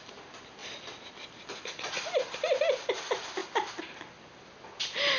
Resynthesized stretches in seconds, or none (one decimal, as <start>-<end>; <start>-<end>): none